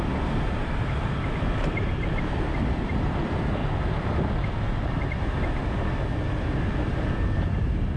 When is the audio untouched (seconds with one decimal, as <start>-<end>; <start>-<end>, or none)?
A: 3.6-6.9